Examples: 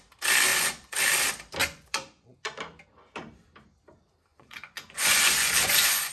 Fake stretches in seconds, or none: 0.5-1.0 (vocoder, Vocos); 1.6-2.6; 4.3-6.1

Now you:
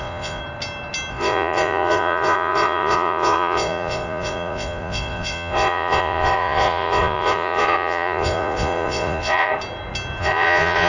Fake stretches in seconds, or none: 0.0-0.4 (vocoder, Vocos); 1.1-9.5; 10.2-10.9

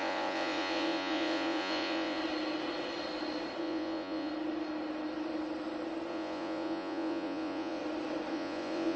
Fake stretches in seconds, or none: 0.0-2.2 (vocoder, Vocos); 3.6-4.3; 6.1-7.8; 8.3-9.0

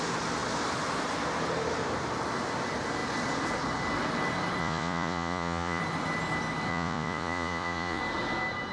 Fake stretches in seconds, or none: 4.6-5.8 (vocoder, Vocos); 6.7-8.0